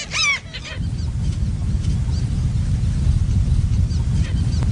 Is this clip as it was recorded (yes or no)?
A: yes